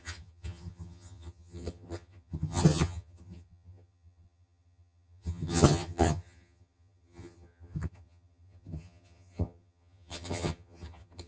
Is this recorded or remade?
remade